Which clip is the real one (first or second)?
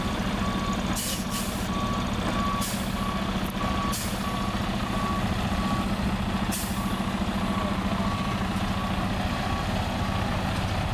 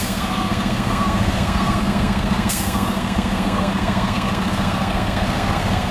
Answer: first